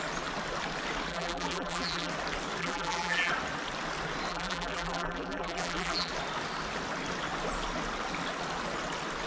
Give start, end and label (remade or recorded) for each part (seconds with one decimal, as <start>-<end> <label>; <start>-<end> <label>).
0.0-1.1 recorded; 1.1-2.1 remade; 2.1-2.6 recorded; 2.6-3.3 remade; 3.3-4.3 recorded; 4.3-6.1 remade; 6.1-9.3 recorded